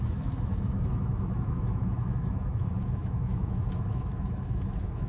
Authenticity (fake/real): fake